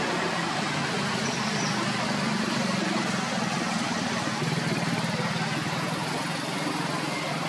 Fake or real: real